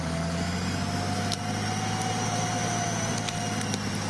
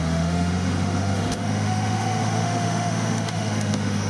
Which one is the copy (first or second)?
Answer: second